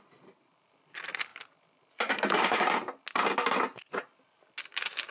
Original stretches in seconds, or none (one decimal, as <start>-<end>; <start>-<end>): 0.0-5.1